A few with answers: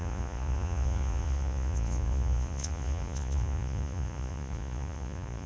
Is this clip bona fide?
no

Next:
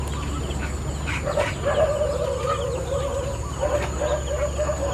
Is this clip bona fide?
yes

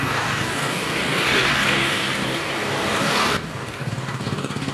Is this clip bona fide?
no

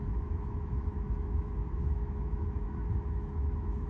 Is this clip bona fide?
no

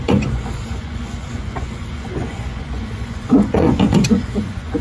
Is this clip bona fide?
no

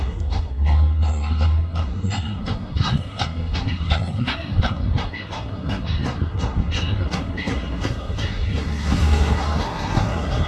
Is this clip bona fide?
no